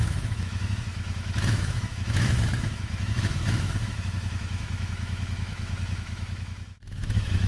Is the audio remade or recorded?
remade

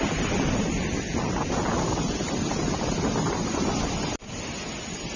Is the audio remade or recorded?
recorded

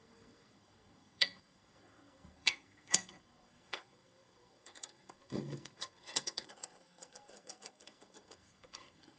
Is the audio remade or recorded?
remade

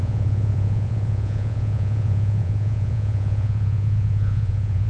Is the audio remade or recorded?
remade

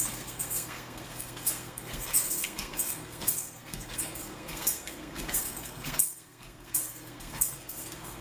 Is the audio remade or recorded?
remade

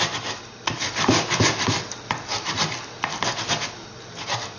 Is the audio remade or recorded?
recorded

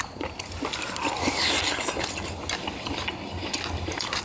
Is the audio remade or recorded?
recorded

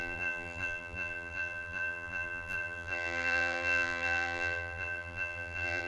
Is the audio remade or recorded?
remade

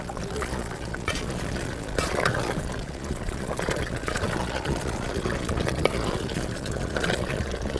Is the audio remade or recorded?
remade